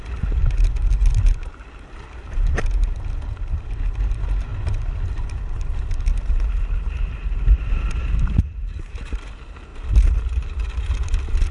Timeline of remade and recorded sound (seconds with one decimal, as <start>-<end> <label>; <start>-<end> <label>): 0.0-4.5 recorded; 4.5-5.8 remade; 5.8-9.7 recorded; 9.7-10.7 remade; 10.7-11.5 recorded